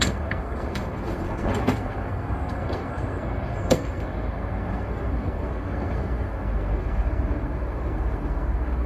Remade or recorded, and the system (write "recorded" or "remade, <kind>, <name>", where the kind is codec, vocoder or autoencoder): remade, codec, SNAC